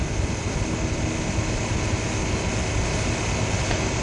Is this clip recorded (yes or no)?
yes